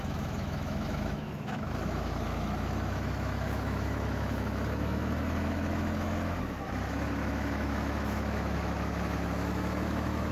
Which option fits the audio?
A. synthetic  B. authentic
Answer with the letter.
A